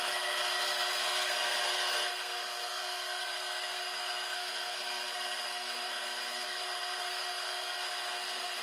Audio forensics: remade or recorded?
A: remade